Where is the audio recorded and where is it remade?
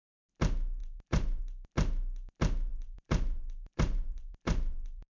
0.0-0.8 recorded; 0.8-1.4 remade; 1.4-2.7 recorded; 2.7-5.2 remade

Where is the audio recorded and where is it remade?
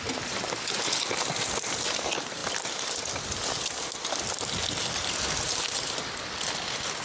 0.0-7.0 recorded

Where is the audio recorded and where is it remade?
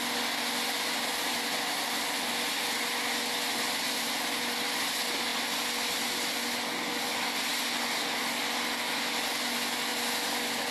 0.0-10.7 recorded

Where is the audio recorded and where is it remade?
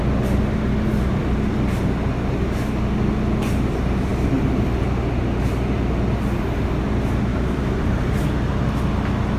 0.0-7.3 recorded; 7.3-8.8 remade; 8.8-9.4 recorded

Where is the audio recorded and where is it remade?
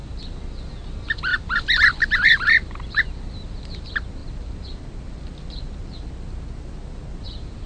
0.0-1.3 recorded; 1.3-3.8 remade; 3.8-4.2 recorded; 4.2-6.1 remade; 6.1-7.7 recorded